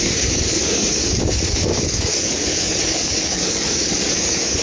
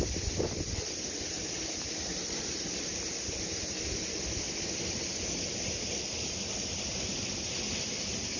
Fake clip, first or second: first